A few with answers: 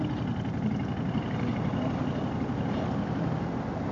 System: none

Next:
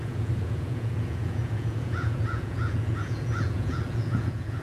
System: vocoder, Vocos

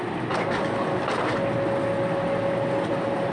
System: none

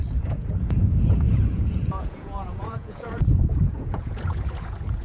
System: vocoder, Vocos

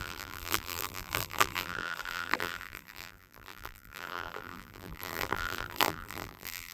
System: vocoder, BigVGAN v2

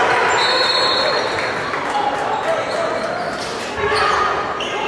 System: none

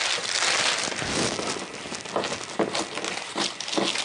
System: none